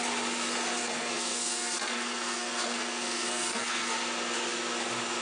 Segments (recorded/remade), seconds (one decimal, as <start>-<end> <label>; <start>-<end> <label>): 0.0-0.8 recorded; 0.8-3.9 remade; 3.9-5.2 recorded